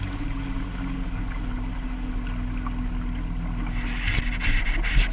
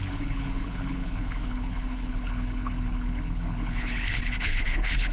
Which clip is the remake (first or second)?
second